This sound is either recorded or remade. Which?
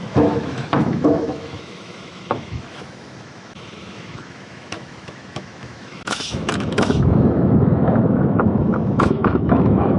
remade